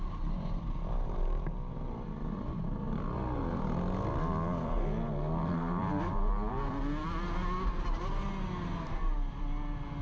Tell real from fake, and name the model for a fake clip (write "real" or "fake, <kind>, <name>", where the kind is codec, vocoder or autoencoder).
real